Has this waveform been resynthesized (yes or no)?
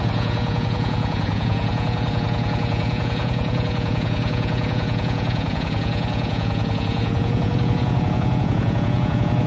yes